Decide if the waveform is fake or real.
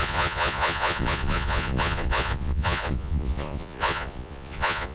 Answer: fake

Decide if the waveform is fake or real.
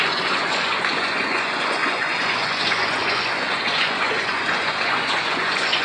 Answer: fake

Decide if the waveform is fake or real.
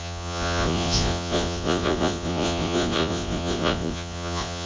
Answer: fake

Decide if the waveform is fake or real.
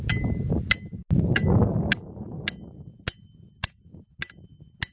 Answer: real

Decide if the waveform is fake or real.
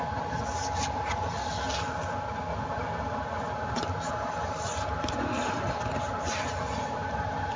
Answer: real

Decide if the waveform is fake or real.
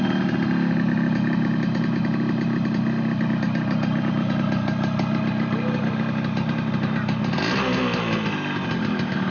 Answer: real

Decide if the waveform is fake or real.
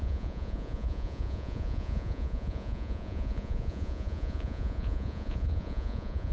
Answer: fake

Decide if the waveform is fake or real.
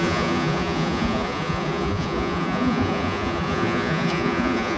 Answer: fake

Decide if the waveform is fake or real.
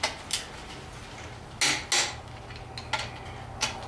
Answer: real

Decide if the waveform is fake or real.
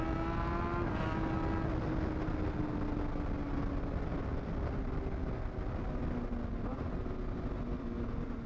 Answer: real